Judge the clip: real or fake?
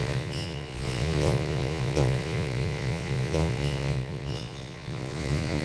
fake